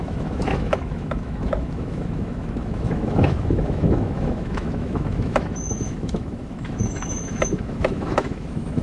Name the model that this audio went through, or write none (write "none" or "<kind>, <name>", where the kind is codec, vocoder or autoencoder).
autoencoder, DAC-VAE